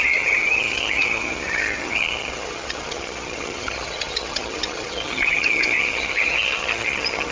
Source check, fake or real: fake